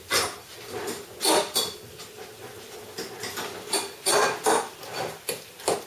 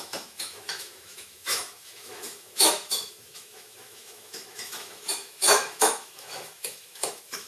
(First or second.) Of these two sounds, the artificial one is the second